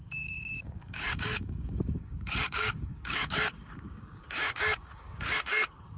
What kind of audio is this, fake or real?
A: fake